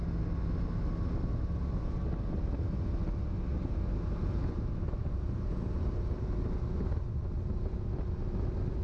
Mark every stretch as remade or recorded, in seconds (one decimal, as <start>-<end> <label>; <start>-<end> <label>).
0.0-3.5 recorded; 3.5-5.0 remade; 5.0-8.8 recorded